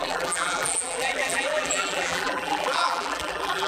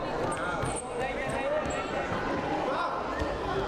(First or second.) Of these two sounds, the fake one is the first